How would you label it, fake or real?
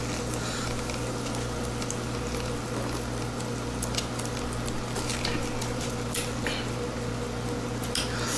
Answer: real